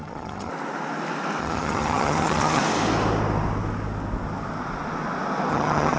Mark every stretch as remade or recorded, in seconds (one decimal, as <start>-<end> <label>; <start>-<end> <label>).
0.0-0.5 remade; 0.5-1.4 recorded; 1.4-2.6 remade; 2.6-5.5 recorded; 5.5-6.0 remade